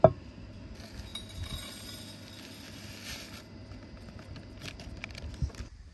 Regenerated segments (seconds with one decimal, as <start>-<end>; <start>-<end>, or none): none